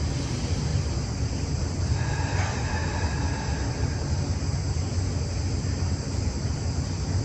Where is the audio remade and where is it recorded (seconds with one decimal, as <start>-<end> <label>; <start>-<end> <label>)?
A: 0.0-7.2 recorded